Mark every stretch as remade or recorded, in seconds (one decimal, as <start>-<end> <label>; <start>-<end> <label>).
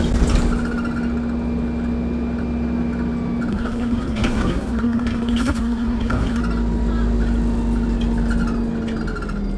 0.0-3.5 recorded; 3.5-6.4 remade; 6.4-9.6 recorded